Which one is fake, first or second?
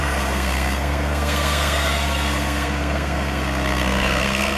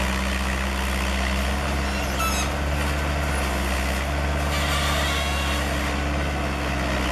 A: first